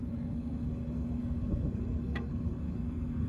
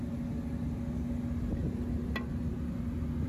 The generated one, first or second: first